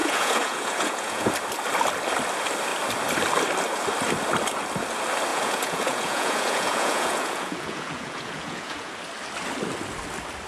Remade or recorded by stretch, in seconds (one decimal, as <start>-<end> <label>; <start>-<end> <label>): 0.0-1.3 remade; 1.3-5.3 recorded; 5.3-8.9 remade; 8.9-10.5 recorded